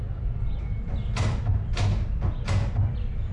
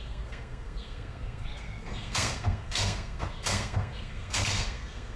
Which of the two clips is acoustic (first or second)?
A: first